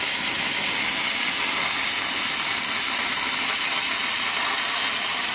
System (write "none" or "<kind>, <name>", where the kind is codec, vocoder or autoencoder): none